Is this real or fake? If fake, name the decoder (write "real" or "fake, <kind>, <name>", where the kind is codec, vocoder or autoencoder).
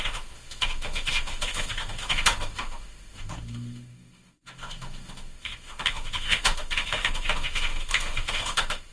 fake, autoencoder, DAC-VAE